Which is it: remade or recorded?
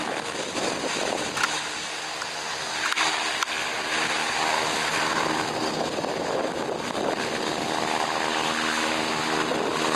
recorded